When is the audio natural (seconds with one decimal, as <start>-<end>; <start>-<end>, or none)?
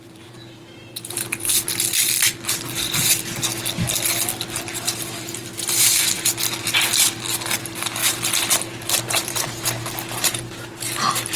1.5-3.0; 3.5-4.8; 6.3-7.6; 8.0-9.0